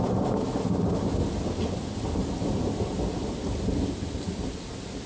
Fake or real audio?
real